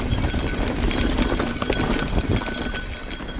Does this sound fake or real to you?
real